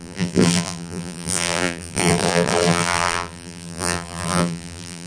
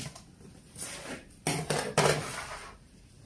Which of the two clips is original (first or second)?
second